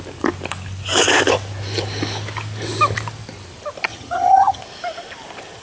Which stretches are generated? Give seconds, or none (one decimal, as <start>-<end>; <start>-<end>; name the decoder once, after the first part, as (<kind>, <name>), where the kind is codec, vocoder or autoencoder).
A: 3.9-4.6 (vocoder, HiFi-GAN)

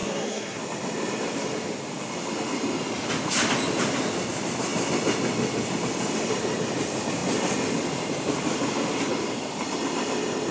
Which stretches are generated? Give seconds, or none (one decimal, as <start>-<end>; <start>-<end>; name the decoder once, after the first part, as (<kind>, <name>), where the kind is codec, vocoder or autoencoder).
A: 0.0-0.6 (codec, SNAC)